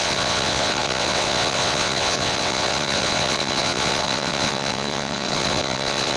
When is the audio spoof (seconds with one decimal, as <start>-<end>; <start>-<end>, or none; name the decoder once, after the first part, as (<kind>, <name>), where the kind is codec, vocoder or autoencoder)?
0.0-6.2 (vocoder, WaveNeXt)